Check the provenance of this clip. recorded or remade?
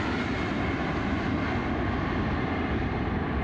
recorded